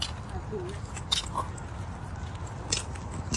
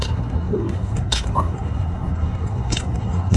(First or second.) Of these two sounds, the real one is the first